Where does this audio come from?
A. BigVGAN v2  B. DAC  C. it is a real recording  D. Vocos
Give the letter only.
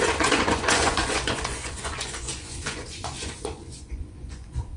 D